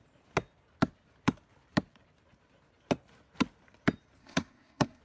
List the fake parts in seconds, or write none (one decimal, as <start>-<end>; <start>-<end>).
4.2-5.0